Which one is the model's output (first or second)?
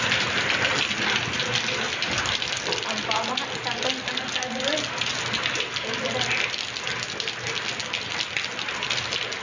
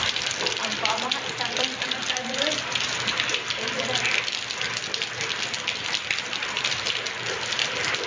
second